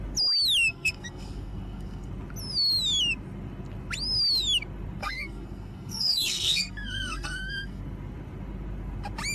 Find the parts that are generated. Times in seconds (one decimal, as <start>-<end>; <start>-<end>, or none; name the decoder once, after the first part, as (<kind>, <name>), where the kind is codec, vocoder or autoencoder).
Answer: 0.7-2.1 (codec, SNAC); 5.0-7.8